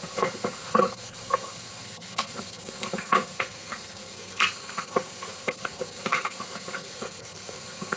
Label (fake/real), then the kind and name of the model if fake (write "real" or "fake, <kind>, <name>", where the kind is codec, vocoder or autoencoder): fake, codec, SNAC